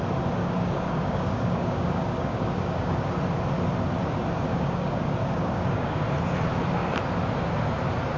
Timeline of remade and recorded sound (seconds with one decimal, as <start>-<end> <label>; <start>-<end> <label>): 0.0-0.4 recorded; 0.4-3.1 remade; 3.1-4.5 recorded; 4.5-6.0 remade; 6.0-8.2 recorded